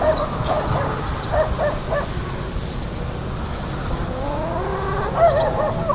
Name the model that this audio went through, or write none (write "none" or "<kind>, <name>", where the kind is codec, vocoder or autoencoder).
none